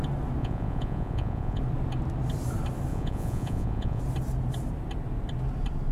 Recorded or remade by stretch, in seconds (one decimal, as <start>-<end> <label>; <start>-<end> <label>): 0.0-0.4 recorded; 0.4-1.6 remade; 1.6-2.9 recorded; 2.9-4.0 remade; 4.0-5.9 recorded